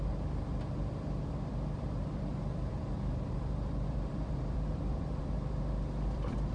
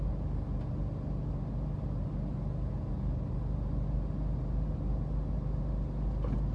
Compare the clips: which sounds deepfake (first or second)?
first